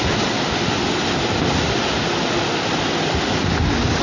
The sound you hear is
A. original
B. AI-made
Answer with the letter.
A